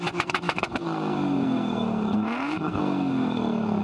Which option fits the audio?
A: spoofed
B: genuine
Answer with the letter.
A